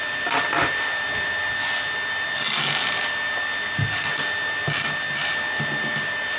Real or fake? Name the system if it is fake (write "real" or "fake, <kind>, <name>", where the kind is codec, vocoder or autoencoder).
real